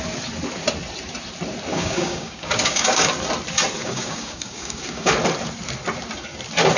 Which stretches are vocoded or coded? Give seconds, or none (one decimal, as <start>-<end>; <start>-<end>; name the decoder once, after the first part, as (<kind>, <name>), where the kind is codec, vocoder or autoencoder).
1.7-3.1 (codec, DAC); 3.8-5.1